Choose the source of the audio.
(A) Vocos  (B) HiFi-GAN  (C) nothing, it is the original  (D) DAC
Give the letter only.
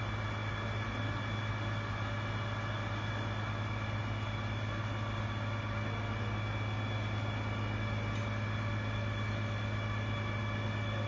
C